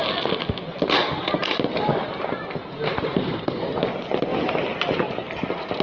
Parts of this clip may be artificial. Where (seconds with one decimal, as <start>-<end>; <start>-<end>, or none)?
3.2-3.7